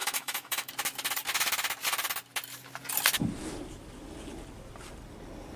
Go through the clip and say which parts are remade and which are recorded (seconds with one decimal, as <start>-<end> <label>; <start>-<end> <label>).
0.0-0.7 remade; 0.7-5.6 recorded